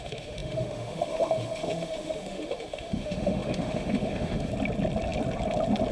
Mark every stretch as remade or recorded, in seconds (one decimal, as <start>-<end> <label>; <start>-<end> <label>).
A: 0.0-4.5 remade; 4.5-5.9 recorded